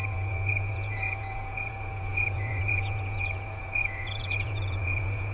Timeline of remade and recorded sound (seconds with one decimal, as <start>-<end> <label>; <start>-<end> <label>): 0.0-5.3 remade